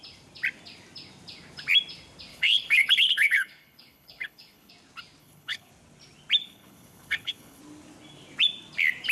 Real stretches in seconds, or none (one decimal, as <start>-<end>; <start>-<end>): 0.0-2.3; 4.7-5.2; 5.7-6.4; 7.6-9.1